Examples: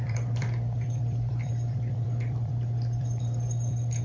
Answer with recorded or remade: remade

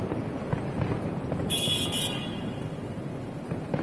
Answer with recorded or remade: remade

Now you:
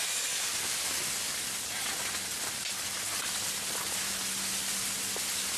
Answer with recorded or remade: recorded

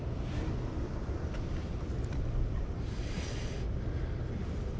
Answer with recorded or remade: remade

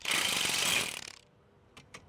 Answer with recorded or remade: remade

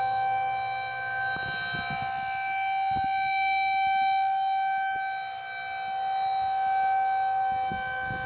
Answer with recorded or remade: recorded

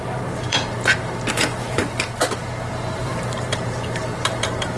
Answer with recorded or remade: remade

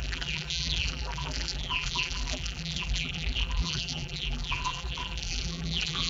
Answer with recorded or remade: remade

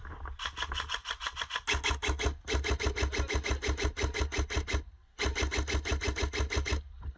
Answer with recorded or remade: recorded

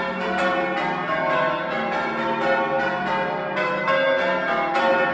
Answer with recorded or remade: recorded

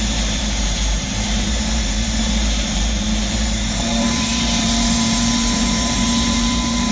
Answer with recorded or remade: remade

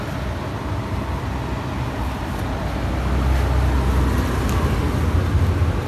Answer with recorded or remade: recorded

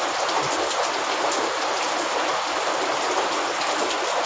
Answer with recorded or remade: recorded